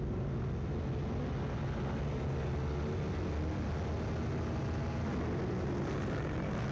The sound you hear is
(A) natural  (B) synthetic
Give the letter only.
A